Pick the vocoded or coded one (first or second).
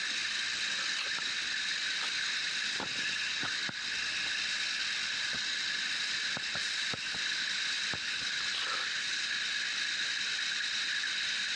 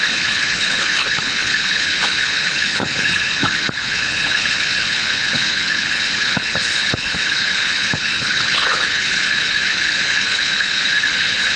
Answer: second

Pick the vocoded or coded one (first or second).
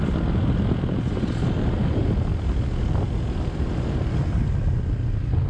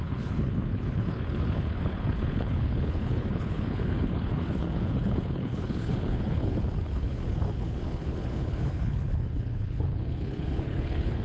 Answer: second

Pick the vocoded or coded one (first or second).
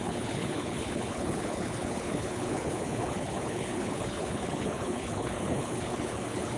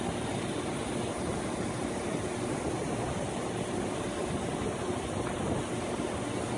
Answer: first